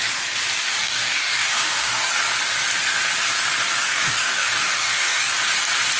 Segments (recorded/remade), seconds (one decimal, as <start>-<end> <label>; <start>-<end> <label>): 0.0-0.6 recorded; 0.6-2.2 remade; 2.2-3.8 recorded; 3.8-5.3 remade; 5.3-6.0 recorded